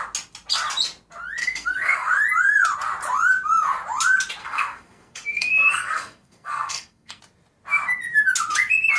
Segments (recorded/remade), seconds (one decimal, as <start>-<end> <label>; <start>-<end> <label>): 0.0-1.4 recorded; 1.4-2.1 remade; 2.1-4.4 recorded; 4.4-7.2 remade; 7.2-9.0 recorded